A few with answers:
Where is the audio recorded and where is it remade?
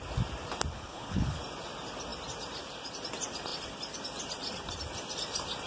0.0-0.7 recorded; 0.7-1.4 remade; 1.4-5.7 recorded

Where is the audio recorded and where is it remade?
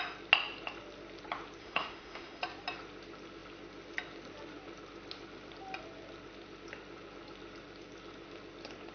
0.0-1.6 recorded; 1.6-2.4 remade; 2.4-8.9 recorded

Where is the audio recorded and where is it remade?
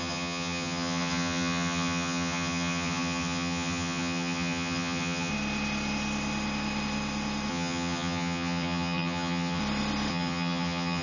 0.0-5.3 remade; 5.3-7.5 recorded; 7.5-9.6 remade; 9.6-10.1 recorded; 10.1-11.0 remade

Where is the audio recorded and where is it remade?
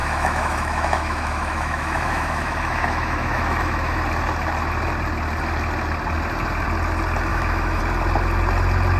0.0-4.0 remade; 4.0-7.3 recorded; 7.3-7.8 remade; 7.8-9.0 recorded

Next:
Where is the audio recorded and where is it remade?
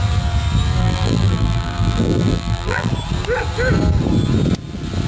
0.0-0.8 recorded; 0.8-2.9 remade; 2.9-5.1 recorded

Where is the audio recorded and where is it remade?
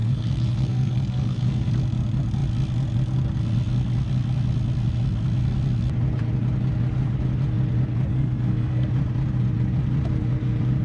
0.0-1.7 remade; 1.7-8.1 recorded; 8.1-8.9 remade; 8.9-10.8 recorded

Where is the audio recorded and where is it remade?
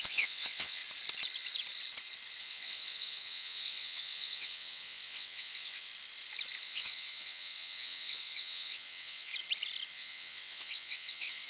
0.0-0.8 remade; 0.8-2.4 recorded; 2.4-5.9 remade; 5.9-6.6 recorded; 6.6-9.3 remade; 9.3-9.9 recorded; 9.9-11.5 remade